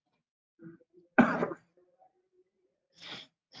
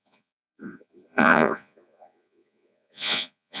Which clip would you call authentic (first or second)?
first